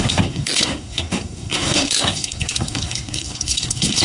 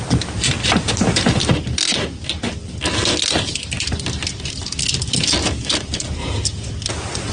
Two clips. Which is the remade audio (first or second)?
first